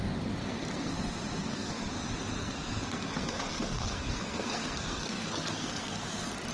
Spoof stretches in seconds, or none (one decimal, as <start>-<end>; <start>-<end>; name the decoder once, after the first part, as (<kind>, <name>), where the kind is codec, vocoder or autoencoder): 0.4-0.9 (codec, SNAC); 1.4-1.9; 2.4-6.0